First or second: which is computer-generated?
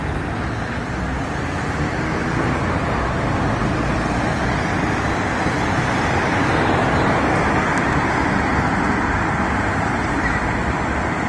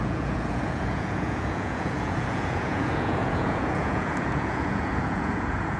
second